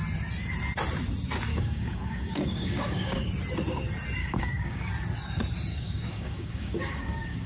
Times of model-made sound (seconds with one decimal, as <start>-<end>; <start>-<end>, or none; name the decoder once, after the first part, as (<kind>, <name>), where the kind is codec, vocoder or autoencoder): 1.5-3.3 (codec, DAC); 4.2-4.9; 5.7-7.5